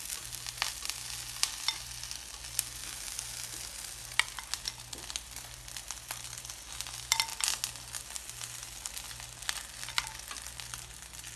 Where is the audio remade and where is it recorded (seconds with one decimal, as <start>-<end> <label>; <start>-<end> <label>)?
0.0-11.4 recorded